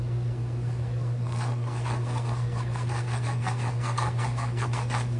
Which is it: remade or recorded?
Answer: remade